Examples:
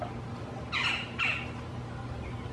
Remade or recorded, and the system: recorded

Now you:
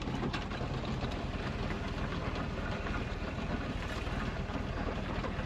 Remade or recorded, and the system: recorded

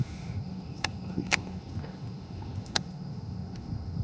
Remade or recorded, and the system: remade, autoencoder, DAC-VAE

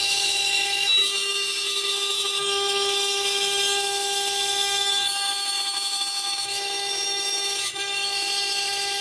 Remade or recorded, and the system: remade, autoencoder, DAC-VAE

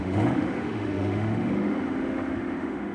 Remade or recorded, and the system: remade, autoencoder, DAC-VAE